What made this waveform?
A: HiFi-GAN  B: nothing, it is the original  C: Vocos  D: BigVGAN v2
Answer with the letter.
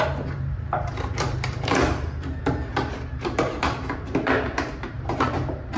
D